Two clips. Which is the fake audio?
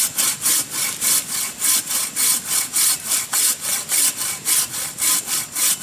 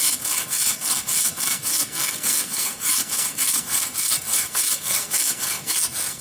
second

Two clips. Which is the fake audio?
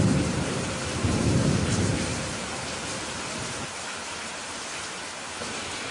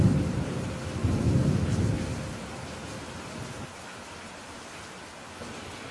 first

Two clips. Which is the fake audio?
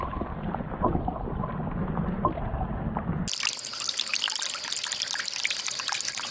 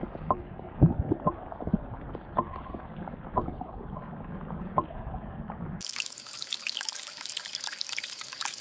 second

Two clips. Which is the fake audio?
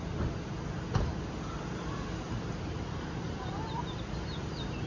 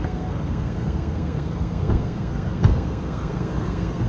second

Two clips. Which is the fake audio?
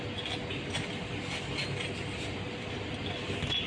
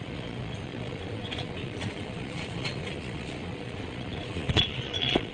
second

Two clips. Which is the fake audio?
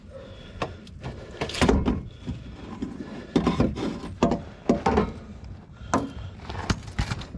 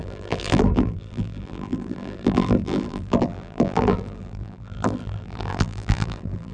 second